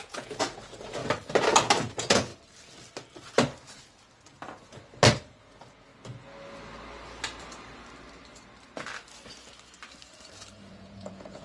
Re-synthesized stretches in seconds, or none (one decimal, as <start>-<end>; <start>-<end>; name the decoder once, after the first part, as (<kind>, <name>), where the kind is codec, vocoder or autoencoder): 0.0-1.0 (vocoder, Vocos); 1.9-2.3; 5.4-5.9; 10.7-11.4